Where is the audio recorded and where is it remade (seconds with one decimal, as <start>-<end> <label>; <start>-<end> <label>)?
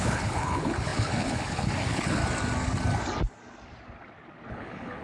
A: 0.0-2.2 remade; 2.2-4.5 recorded; 4.5-5.0 remade